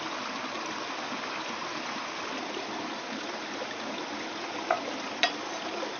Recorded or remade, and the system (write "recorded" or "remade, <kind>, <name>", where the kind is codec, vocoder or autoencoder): recorded